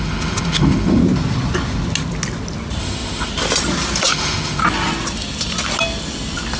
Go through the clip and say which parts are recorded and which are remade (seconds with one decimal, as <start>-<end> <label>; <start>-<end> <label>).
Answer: 0.0-1.0 remade; 1.0-2.8 recorded; 2.8-3.3 remade; 3.3-4.1 recorded; 4.1-4.6 remade; 4.6-6.6 recorded